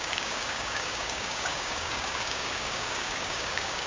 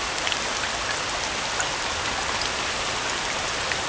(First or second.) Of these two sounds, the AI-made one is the first